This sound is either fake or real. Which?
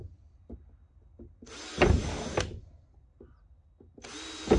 real